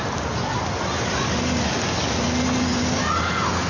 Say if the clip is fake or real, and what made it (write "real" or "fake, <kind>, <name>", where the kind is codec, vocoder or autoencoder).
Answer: real